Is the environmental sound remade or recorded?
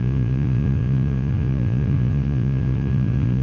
remade